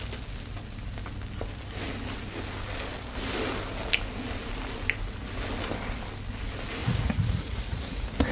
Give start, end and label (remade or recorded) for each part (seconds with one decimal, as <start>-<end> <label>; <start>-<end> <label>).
0.0-6.8 recorded; 6.8-8.3 remade